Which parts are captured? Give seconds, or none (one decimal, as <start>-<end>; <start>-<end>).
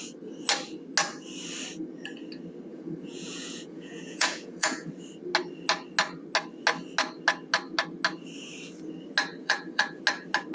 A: 0.0-2.7; 4.9-9.4; 10.0-10.5